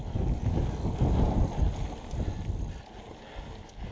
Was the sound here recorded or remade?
recorded